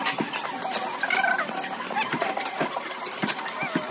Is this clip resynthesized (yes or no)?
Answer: no